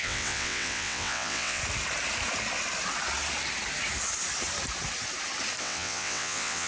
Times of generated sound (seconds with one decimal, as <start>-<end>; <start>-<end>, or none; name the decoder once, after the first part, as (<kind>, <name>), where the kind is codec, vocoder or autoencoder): 0.0-1.6 (vocoder, WaveNeXt); 5.6-6.7

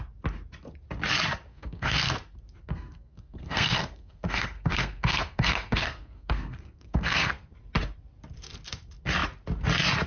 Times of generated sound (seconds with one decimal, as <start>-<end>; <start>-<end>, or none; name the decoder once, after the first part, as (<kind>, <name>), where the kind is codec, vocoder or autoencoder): 1.5-2.1 (codec, SNAC); 2.6-7.5

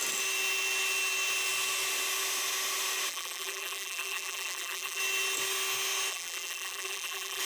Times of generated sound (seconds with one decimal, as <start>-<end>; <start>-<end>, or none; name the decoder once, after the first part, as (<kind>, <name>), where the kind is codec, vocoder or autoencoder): 3.1-5.0 (vocoder, BigVGAN v2); 6.1-7.4